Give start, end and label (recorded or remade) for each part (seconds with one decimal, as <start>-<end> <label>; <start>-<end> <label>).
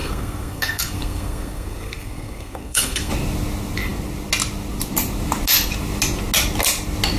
0.0-3.1 remade; 3.1-7.2 recorded